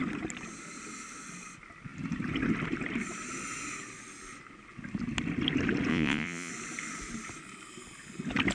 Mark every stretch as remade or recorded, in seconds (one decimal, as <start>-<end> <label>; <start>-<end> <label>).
0.0-5.9 recorded; 5.9-6.5 remade; 6.5-8.5 recorded